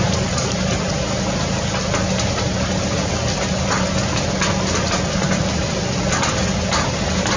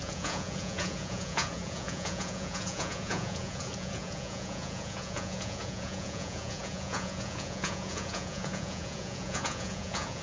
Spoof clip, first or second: second